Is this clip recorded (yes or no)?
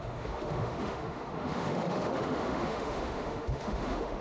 no